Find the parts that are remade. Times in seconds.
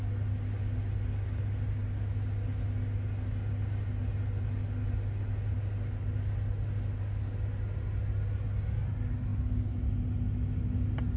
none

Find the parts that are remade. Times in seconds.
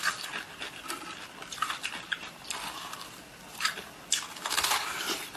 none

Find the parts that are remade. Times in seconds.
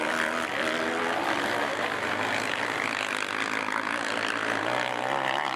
none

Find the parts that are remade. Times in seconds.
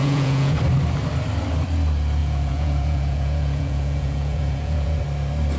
0.0-0.6; 2.2-5.0